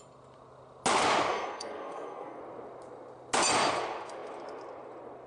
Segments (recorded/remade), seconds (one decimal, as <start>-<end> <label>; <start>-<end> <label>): 0.0-1.3 recorded; 1.3-2.4 remade; 2.4-5.3 recorded